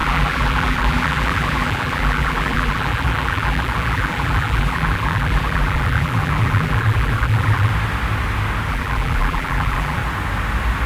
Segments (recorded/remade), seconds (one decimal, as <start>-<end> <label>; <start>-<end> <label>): 0.0-7.7 remade; 7.7-8.7 recorded; 8.7-10.0 remade; 10.0-10.9 recorded